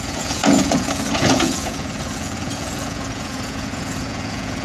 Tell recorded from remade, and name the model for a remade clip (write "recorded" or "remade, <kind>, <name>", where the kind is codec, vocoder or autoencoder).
remade, vocoder, Vocos